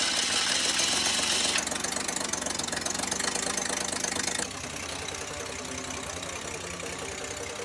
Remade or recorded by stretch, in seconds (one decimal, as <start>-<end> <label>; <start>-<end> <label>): 0.0-7.6 recorded